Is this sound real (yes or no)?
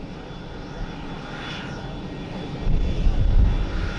yes